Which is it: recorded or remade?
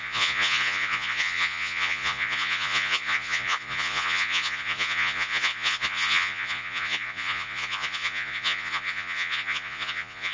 remade